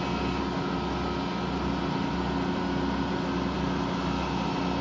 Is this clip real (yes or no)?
yes